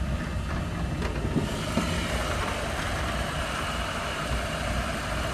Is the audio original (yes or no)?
yes